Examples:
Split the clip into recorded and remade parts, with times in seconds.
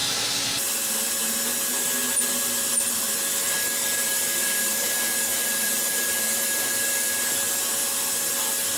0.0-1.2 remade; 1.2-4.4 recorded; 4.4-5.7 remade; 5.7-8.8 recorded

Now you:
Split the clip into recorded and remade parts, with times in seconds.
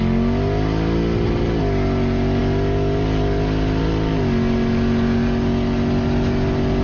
0.0-6.8 recorded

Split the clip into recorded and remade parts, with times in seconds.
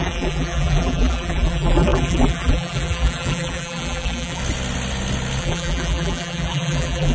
0.0-4.4 remade; 4.4-5.4 recorded; 5.4-7.1 remade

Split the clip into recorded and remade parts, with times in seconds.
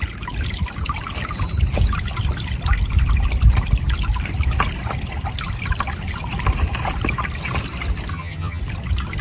0.0-8.1 recorded; 8.1-8.6 remade; 8.6-9.2 recorded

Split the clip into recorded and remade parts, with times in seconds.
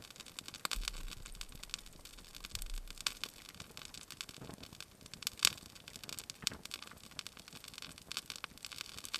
0.0-9.2 recorded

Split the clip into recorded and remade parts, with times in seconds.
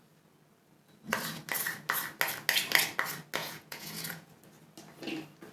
0.0-3.4 recorded; 3.4-4.3 remade; 4.3-5.5 recorded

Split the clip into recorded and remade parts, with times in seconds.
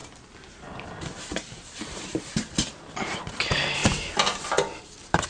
0.0-0.7 recorded; 0.7-2.3 remade; 2.3-2.9 recorded; 2.9-3.8 remade; 3.8-4.8 recorded; 4.8-5.3 remade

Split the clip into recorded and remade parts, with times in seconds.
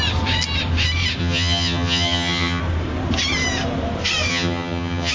0.0-1.2 recorded; 1.2-2.6 remade; 2.6-4.3 recorded; 4.3-5.1 remade